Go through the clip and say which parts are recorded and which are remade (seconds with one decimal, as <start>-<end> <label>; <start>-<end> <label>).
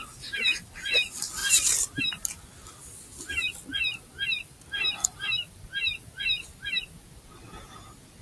0.0-8.2 recorded